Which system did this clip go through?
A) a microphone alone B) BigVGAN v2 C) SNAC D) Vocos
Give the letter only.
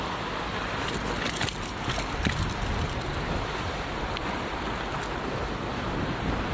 A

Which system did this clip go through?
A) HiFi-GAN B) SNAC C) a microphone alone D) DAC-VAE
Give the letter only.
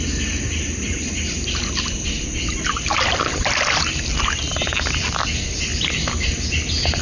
C